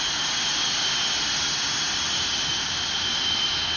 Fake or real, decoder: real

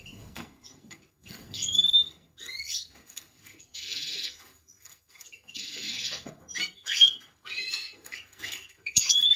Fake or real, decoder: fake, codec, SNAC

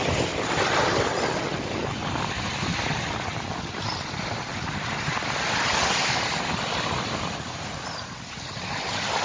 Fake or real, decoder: real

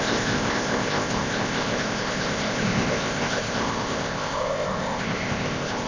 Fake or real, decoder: fake, codec, ZipCodec